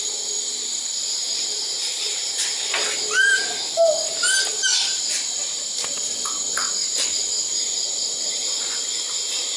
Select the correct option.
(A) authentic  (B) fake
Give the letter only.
A